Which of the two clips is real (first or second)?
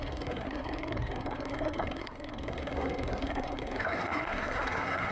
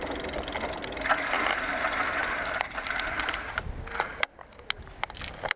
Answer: second